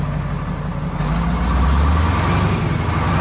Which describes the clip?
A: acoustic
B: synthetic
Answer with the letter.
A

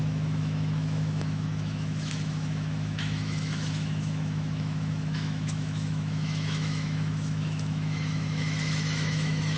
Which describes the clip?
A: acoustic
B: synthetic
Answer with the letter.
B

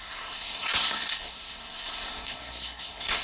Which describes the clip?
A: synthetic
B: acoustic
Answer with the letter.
A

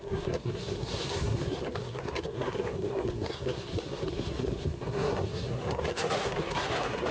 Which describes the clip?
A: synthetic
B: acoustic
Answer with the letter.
A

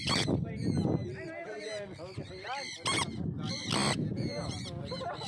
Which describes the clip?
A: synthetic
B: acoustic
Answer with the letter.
B